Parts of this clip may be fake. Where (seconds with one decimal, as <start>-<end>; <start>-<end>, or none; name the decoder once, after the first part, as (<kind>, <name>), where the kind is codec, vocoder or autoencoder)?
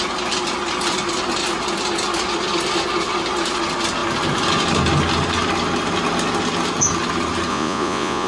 7.5-8.3 (vocoder, Vocos)